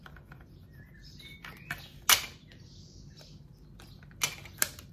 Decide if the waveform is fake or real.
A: real